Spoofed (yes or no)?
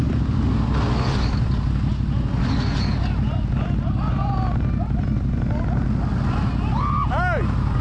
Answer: no